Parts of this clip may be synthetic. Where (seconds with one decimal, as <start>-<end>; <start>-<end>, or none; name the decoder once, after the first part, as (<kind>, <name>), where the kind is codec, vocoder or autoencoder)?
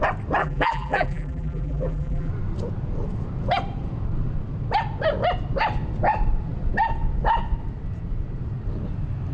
0.4-2.3 (vocoder, BigVGAN v2)